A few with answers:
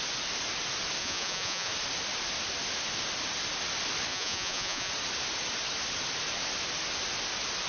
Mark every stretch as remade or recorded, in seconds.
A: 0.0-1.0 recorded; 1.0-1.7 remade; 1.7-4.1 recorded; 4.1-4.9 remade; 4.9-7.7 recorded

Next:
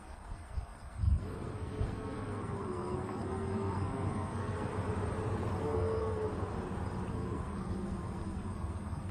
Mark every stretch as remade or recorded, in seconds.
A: 0.0-4.7 remade; 4.7-5.6 recorded; 5.6-6.3 remade; 6.3-7.1 recorded; 7.1-9.1 remade

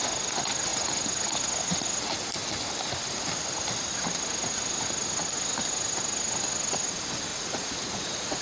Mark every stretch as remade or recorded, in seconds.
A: 0.0-7.3 recorded; 7.3-8.4 remade

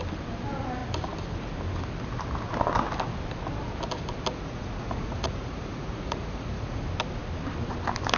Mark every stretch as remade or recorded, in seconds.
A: 0.0-4.3 recorded; 4.3-6.8 remade; 6.8-8.2 recorded